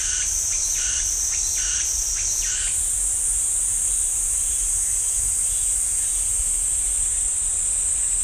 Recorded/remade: recorded